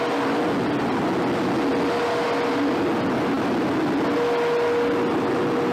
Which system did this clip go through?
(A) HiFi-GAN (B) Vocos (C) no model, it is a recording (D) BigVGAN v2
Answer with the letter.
C